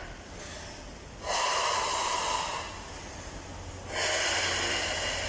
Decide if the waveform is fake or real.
real